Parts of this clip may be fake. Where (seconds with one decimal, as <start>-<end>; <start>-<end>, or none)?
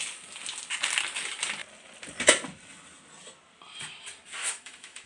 4.4-5.1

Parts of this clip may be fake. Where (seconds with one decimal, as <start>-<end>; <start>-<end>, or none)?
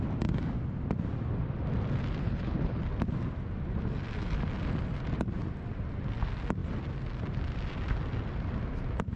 2.2-2.8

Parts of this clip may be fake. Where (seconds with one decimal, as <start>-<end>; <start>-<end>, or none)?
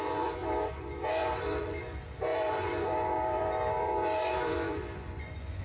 0.0-5.6